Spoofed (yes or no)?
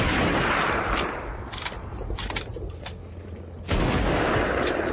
yes